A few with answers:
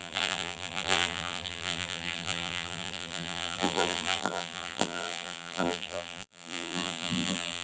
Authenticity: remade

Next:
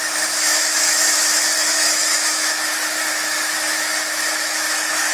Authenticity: remade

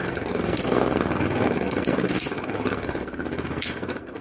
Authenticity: remade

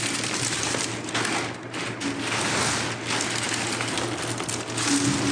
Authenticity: recorded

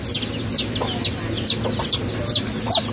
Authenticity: recorded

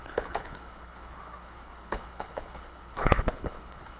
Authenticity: remade